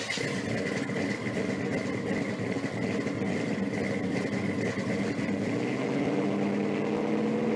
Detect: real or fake real